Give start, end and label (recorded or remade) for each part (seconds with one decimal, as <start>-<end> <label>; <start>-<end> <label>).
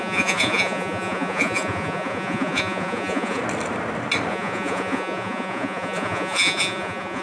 0.0-3.4 remade; 3.4-4.3 recorded; 4.3-7.2 remade